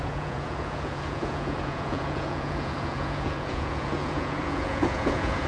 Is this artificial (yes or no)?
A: yes